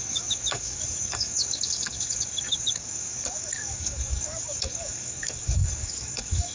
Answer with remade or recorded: remade